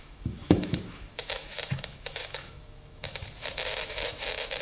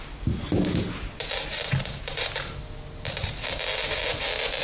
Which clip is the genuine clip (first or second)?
second